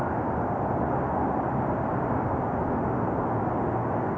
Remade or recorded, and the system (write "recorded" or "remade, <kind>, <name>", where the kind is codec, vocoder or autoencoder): recorded